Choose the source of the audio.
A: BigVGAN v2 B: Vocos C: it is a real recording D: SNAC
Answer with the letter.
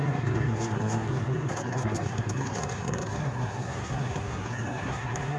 D